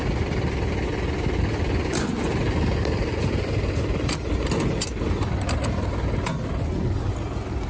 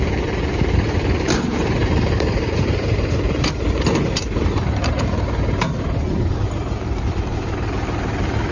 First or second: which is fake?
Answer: second